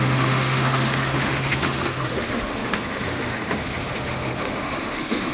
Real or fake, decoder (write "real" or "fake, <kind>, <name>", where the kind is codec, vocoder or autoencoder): fake, autoencoder, DAC-VAE